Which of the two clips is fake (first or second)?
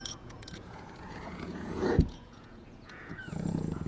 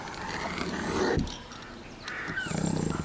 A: first